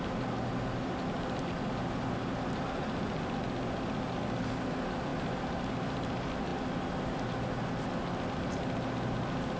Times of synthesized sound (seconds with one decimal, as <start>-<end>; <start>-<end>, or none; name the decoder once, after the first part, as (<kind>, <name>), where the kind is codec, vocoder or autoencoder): none